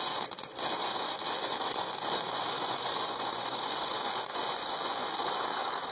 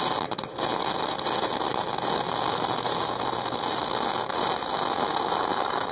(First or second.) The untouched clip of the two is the second